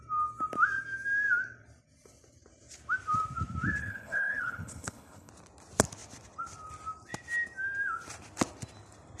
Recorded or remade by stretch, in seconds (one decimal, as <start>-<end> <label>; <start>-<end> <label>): 0.0-3.8 recorded; 3.8-5.3 remade; 5.3-9.2 recorded

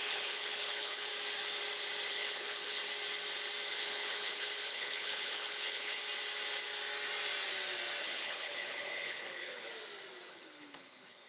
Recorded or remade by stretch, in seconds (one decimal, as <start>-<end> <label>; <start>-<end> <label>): 0.0-1.1 remade; 1.1-2.1 recorded; 2.1-2.8 remade; 2.8-3.7 recorded; 3.7-6.0 remade; 6.0-8.0 recorded; 8.0-9.7 remade; 9.7-10.3 recorded; 10.3-11.3 remade

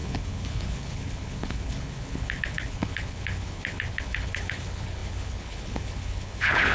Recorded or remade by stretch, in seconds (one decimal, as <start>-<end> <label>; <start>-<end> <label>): 0.0-6.7 remade